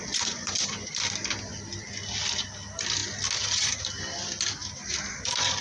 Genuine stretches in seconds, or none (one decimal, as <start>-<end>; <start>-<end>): 0.9-5.6